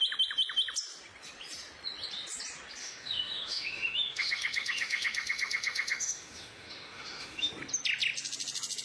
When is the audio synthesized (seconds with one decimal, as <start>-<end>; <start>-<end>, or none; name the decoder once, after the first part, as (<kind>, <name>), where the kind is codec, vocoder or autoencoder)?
2.8-7.5 (autoencoder, DAC-VAE)